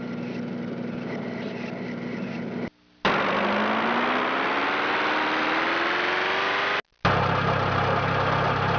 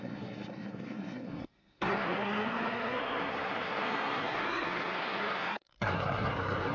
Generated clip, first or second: second